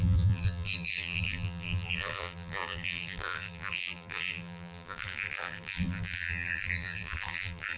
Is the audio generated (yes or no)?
yes